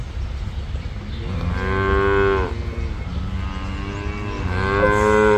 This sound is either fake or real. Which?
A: real